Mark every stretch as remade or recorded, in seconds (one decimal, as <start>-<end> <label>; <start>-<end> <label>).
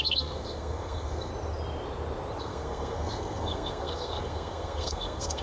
0.0-1.3 remade; 1.3-2.4 recorded; 2.4-5.4 remade